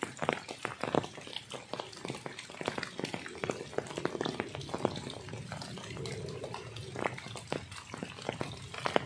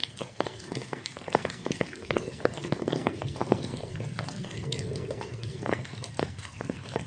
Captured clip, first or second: first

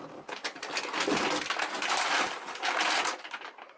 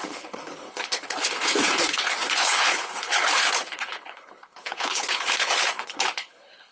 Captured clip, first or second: first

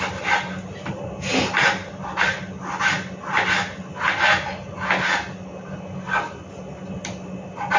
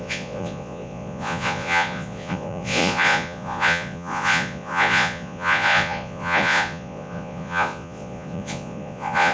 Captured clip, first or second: first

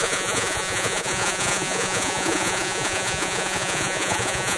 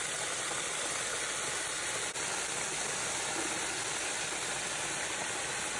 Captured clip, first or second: second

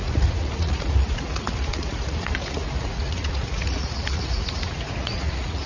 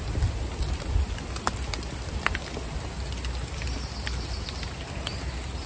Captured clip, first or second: second